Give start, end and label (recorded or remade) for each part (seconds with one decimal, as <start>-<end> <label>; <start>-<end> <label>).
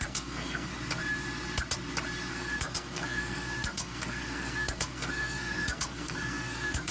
0.0-0.7 remade; 0.7-2.3 recorded; 2.3-6.9 remade